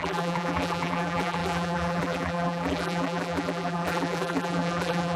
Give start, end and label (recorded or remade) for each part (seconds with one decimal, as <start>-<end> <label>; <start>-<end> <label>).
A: 0.0-5.2 remade